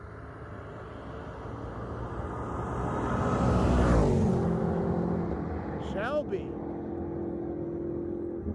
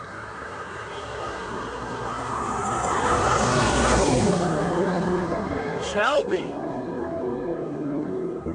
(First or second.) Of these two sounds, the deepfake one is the second